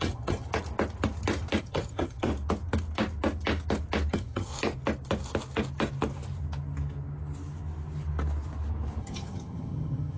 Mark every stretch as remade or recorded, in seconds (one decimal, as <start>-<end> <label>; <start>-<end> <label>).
0.0-0.5 remade; 0.5-1.6 recorded; 1.6-2.3 remade; 2.3-4.1 recorded; 4.1-4.5 remade; 4.5-9.0 recorded; 9.0-10.2 remade